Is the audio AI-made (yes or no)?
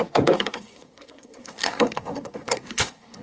yes